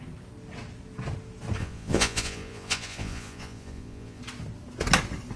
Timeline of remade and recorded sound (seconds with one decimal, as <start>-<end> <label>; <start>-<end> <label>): 0.0-1.6 recorded; 1.6-4.2 remade; 4.2-5.4 recorded